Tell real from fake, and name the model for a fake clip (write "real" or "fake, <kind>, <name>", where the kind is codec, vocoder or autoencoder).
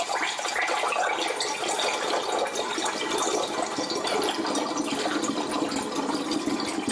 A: real